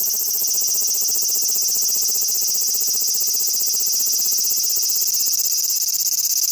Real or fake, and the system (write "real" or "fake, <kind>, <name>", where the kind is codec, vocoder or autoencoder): real